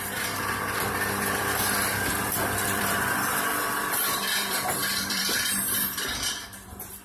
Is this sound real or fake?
fake